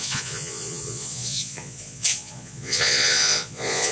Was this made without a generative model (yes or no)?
no